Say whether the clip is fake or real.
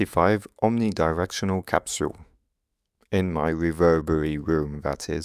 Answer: fake